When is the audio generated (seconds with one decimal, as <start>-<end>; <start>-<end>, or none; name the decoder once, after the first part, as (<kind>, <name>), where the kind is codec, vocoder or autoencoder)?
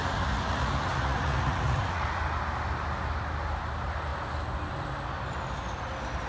0.0-2.2 (vocoder, Vocos)